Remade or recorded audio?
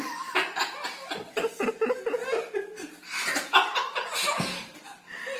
recorded